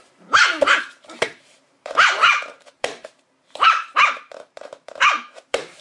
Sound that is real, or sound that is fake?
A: fake